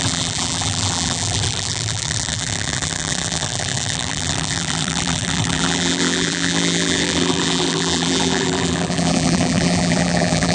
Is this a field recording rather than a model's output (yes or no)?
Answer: no